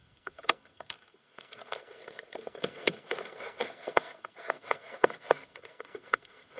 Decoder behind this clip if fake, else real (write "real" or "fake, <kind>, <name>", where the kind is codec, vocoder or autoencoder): fake, codec, SNAC